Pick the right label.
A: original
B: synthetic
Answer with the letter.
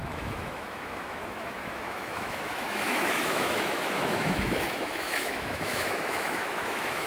B